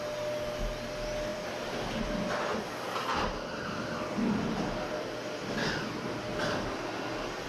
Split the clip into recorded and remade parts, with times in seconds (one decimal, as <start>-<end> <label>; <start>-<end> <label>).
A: 0.0-1.3 recorded; 1.3-5.1 remade; 5.1-6.3 recorded; 6.3-7.5 remade